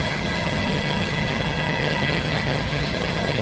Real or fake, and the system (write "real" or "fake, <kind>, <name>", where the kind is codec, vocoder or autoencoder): fake, vocoder, HiFi-GAN